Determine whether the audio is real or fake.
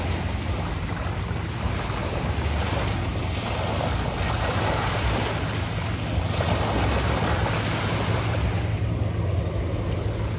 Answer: real